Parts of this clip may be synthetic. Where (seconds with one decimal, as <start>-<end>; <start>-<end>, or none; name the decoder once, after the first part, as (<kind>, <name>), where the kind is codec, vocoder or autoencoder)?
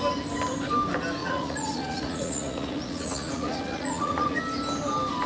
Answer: 1.2-4.4 (vocoder, Vocos)